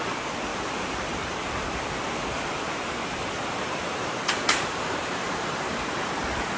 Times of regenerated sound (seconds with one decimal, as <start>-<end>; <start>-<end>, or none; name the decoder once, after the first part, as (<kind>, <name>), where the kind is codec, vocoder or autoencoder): 0.5-1.1 (vocoder, BigVGAN v2); 3.0-6.1